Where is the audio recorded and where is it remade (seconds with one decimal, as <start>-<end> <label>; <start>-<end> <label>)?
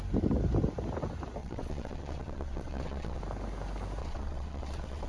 0.0-1.4 recorded; 1.4-3.2 remade; 3.2-4.0 recorded; 4.0-5.1 remade